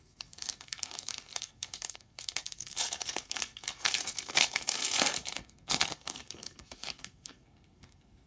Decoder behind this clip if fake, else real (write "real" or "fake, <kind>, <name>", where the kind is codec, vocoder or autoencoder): fake, codec, SNAC